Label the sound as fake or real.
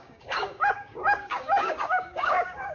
fake